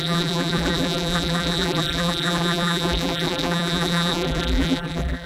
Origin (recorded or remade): remade